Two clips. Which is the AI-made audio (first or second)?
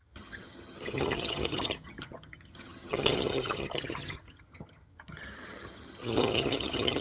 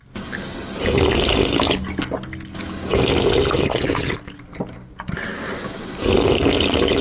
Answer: first